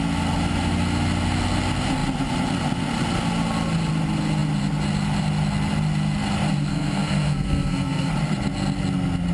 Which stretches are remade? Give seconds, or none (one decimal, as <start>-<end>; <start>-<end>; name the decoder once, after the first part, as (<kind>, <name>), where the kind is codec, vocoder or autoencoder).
6.7-8.1 (codec, SNAC)